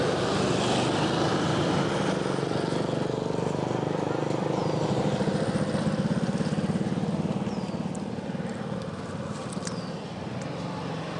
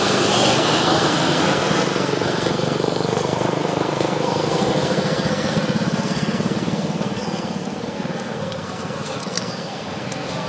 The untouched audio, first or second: first